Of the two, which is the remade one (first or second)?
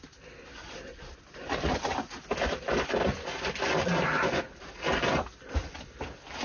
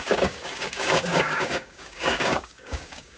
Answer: second